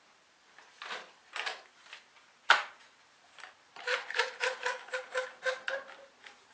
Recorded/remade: recorded